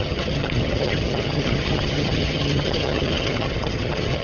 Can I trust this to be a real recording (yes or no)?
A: no